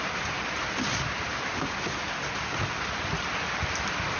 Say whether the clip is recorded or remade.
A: recorded